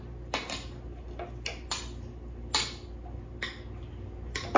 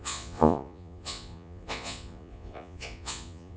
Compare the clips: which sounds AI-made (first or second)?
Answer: second